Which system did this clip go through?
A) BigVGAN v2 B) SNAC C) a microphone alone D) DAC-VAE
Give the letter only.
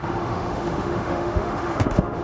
D